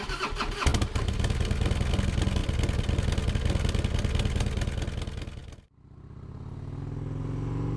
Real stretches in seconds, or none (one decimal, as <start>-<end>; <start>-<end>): 0.0-7.8